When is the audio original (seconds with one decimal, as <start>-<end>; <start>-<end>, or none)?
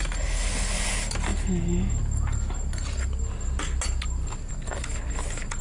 0.0-5.6